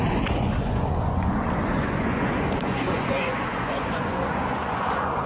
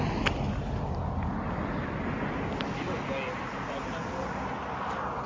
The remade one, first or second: first